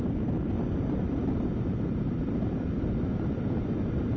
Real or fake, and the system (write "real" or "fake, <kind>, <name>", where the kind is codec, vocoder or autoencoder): real